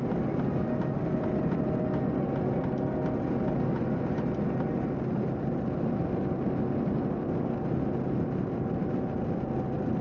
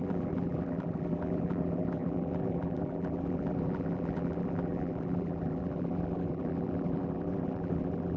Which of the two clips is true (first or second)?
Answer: first